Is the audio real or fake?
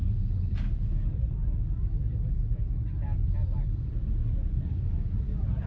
real